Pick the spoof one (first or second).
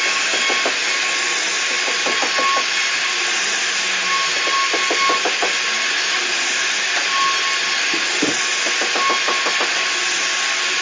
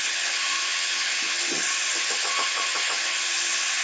second